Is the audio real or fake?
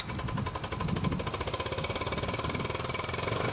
real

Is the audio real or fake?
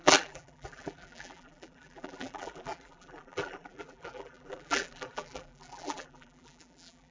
fake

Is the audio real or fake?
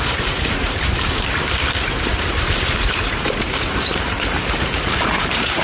fake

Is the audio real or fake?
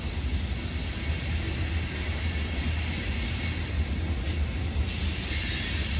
real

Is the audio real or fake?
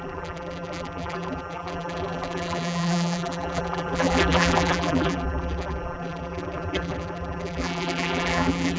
fake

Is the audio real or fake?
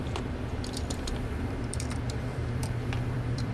fake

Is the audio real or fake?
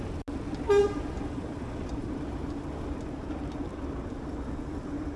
real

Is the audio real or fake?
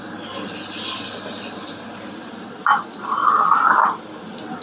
real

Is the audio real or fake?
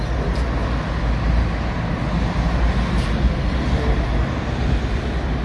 real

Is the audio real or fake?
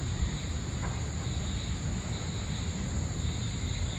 real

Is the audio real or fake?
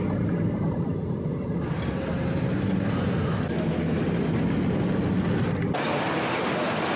real